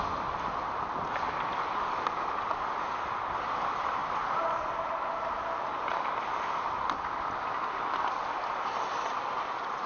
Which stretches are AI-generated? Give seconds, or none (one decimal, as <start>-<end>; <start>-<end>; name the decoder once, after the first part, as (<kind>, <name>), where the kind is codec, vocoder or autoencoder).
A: none